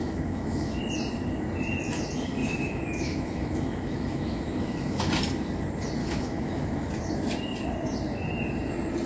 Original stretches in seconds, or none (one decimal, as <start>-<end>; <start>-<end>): 0.8-2.4; 5.0-6.0; 6.9-9.1